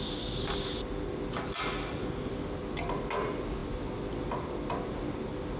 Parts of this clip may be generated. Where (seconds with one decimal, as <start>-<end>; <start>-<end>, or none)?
none